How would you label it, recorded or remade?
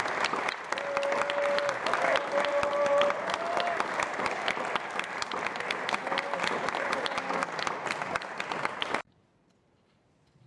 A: recorded